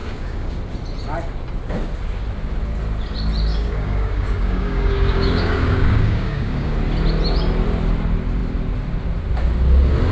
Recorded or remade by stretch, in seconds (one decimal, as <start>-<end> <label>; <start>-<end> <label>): 0.0-0.6 remade; 0.6-3.5 recorded; 3.5-6.7 remade; 6.7-10.1 recorded

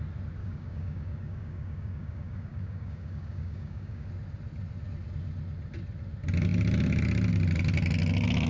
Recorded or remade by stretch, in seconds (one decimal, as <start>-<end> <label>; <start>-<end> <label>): 0.0-0.4 recorded; 0.4-4.1 remade; 4.1-8.5 recorded

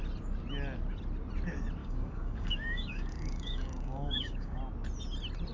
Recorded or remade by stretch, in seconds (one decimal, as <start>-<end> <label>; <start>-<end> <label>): 0.0-1.8 recorded; 1.8-4.6 remade; 4.6-5.5 recorded

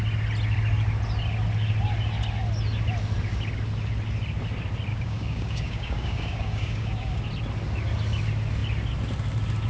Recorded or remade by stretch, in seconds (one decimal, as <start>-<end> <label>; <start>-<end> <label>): 0.0-4.9 recorded; 4.9-7.2 remade; 7.2-9.7 recorded

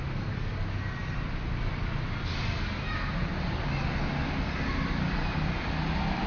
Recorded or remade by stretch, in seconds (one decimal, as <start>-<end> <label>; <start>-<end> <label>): 0.0-6.3 recorded

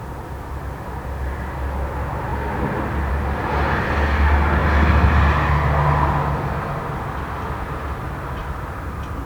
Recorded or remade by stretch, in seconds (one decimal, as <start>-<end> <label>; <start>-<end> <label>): 0.0-9.3 recorded

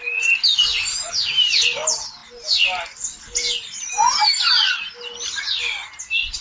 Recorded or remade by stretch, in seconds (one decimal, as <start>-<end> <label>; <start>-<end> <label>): 0.0-6.4 recorded

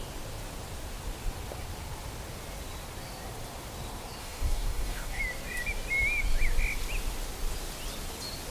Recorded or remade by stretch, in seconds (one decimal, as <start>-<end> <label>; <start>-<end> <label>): 0.0-4.2 recorded; 4.2-5.2 remade; 5.2-8.5 recorded